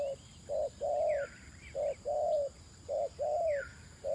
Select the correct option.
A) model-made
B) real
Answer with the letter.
B